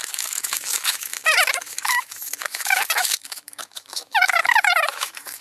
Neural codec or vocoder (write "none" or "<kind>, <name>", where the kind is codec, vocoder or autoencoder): autoencoder, DAC-VAE